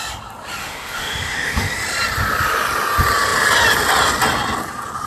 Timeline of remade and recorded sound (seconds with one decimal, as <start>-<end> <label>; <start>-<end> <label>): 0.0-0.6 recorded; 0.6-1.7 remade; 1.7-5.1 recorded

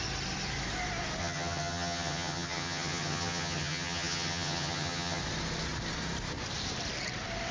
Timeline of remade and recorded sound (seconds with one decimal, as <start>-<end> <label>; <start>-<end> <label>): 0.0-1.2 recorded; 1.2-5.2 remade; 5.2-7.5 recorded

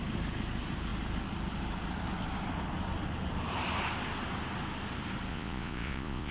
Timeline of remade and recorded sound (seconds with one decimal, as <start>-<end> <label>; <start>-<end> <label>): 0.0-5.3 recorded; 5.3-6.3 remade

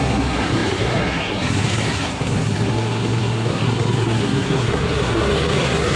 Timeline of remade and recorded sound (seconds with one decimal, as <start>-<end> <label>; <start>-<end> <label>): 0.0-6.0 remade

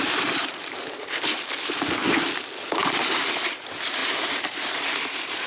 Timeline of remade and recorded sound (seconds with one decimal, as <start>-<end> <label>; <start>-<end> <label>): 0.0-0.4 remade; 0.4-3.0 recorded; 3.0-5.5 remade